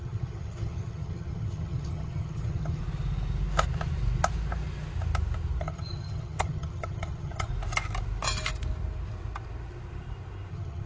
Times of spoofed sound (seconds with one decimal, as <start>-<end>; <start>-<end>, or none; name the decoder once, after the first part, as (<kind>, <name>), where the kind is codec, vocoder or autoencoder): 0.0-2.8 (vocoder, HiFi-GAN); 5.6-7.5; 10.5-10.9